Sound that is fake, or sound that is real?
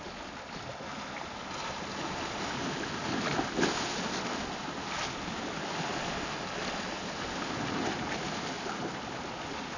real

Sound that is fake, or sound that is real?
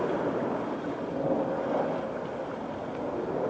real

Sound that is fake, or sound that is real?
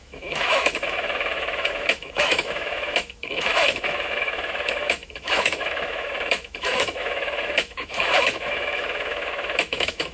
fake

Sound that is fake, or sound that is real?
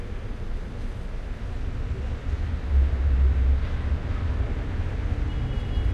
real